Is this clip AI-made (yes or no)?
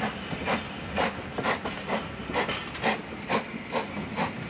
no